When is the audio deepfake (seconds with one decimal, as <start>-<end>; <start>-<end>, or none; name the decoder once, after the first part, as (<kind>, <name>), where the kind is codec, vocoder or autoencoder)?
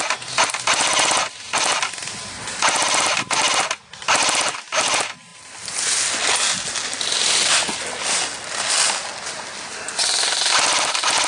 none